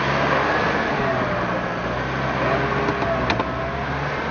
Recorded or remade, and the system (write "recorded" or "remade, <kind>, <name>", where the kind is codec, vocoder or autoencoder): recorded